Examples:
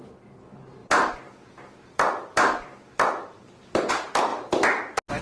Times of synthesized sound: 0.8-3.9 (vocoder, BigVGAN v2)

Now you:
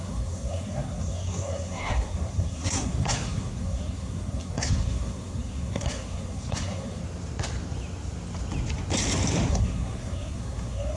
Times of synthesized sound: 0.0-7.0 (codec, SNAC); 9.5-11.0

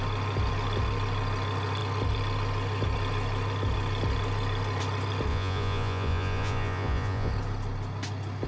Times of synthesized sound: 5.3-7.3 (vocoder, Vocos)

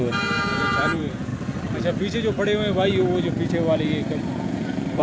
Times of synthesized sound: 0.0-1.3 (vocoder, Vocos); 4.3-5.0